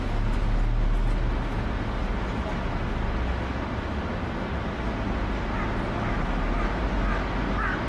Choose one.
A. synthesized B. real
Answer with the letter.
B